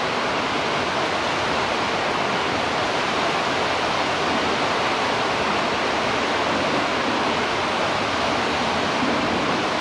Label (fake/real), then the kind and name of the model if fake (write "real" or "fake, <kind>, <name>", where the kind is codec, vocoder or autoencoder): real